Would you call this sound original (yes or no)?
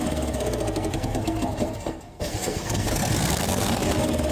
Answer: no